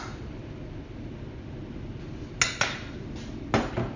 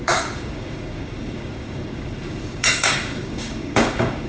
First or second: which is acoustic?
first